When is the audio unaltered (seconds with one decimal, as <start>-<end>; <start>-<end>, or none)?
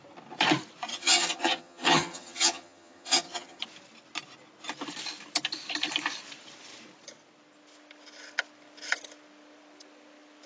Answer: 0.0-0.9; 3.6-10.5